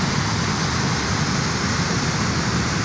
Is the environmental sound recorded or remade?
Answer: recorded